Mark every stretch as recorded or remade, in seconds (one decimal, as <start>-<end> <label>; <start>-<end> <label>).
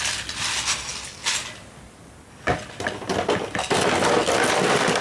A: 0.0-5.0 recorded